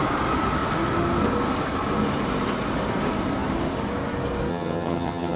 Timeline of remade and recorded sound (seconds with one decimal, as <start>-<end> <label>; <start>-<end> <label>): 0.0-4.5 recorded; 4.5-5.4 remade